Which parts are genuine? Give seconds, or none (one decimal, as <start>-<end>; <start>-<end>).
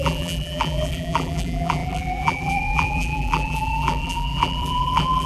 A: none